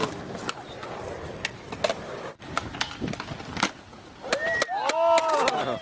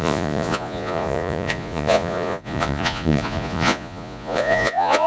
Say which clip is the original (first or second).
first